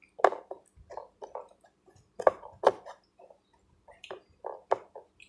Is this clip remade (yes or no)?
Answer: no